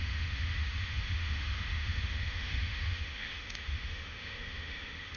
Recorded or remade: remade